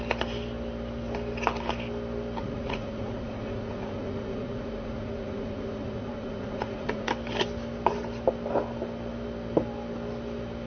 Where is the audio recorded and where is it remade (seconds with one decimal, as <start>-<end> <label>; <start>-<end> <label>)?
0.0-2.4 recorded; 2.4-7.1 remade; 7.1-10.7 recorded

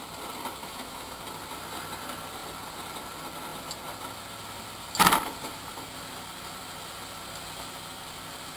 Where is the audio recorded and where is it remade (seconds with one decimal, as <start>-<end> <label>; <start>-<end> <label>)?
0.0-0.6 recorded; 0.6-1.2 remade; 1.2-8.6 recorded

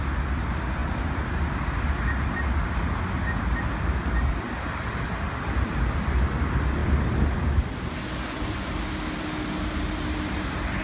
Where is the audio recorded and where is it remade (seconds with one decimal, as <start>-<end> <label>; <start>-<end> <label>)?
0.0-10.8 recorded